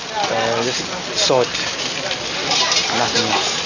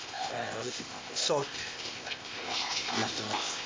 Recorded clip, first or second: first